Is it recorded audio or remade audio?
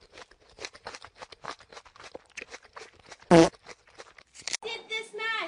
recorded